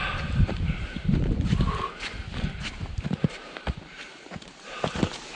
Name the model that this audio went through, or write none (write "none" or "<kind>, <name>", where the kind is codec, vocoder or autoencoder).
vocoder, BigVGAN v2